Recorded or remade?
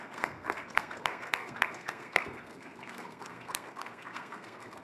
remade